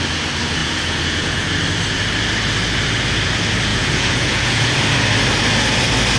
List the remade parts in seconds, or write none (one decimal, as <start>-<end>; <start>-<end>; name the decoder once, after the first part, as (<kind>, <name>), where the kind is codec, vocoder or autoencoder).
0.6-1.5 (vocoder, Vocos); 3.7-4.7